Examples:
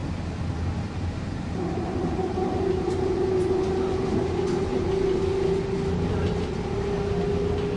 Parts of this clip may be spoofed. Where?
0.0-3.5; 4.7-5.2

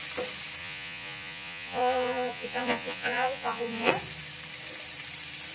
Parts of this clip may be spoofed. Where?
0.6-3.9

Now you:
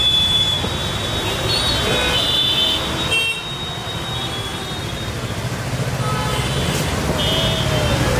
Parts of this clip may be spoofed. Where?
none

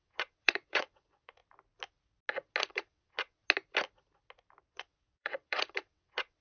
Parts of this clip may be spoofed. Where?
0.0-1.4; 2.6-3.4; 4.6-6.4